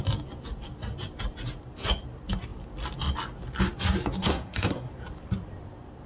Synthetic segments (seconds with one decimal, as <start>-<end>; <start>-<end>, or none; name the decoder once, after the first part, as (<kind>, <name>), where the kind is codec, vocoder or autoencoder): 4.2-4.9 (codec, SNAC)